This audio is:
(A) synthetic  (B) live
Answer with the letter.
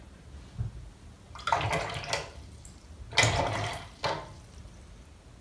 B